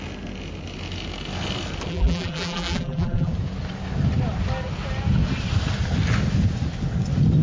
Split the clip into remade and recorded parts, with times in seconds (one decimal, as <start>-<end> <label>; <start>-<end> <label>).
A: 0.0-1.9 recorded; 1.9-3.3 remade; 3.3-7.4 recorded